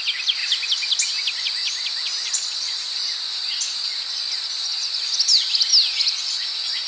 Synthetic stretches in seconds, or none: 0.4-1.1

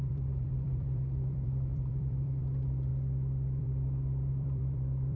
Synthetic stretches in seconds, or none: 0.0-2.9; 3.6-5.2

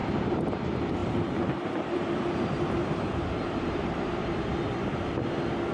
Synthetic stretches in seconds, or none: 0.0-0.5; 1.0-4.4

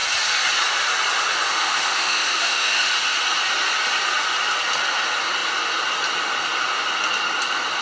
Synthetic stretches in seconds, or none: 1.5-2.9

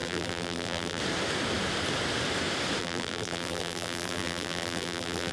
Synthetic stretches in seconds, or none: 0.0-1.0; 2.8-5.3

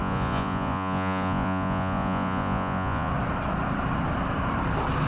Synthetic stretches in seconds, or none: 0.0-3.1